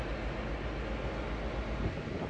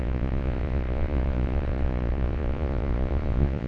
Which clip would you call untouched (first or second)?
first